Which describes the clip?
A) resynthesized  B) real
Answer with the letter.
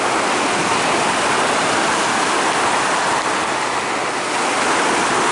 B